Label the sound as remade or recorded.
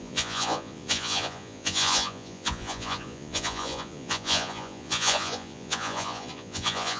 remade